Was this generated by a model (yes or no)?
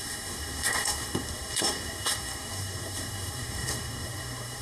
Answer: yes